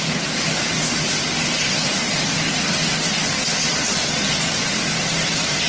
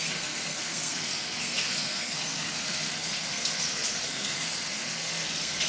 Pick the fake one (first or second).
second